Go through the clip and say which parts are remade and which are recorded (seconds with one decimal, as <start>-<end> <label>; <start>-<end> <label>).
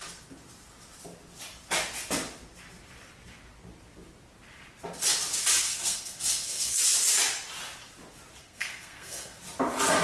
0.0-5.6 recorded; 5.6-6.8 remade; 6.8-8.4 recorded; 8.4-9.4 remade; 9.4-10.0 recorded